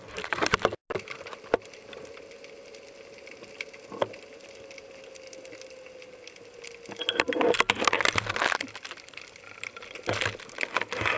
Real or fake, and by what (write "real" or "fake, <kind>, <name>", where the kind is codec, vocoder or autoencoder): real